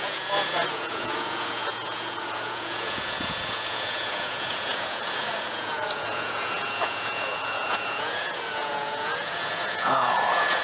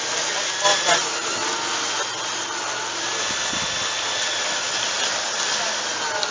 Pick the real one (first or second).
second